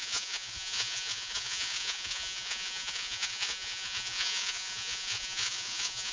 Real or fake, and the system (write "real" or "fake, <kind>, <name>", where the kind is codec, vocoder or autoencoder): fake, vocoder, Vocos